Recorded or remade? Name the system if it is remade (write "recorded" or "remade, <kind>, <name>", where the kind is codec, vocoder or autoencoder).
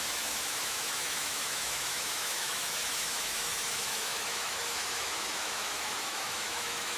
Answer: remade, autoencoder, DAC-VAE